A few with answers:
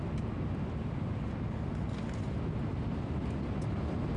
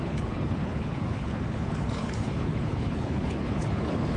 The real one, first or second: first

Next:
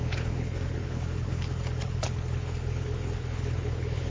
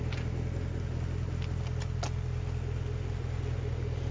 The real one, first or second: second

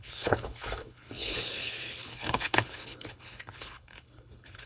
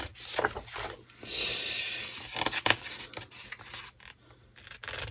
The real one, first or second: second